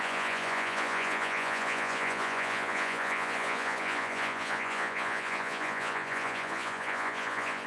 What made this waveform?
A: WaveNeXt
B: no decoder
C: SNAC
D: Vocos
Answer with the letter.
D